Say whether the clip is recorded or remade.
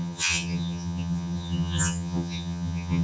remade